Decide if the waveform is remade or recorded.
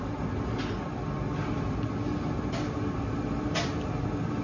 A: recorded